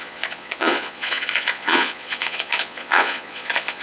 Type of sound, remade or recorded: remade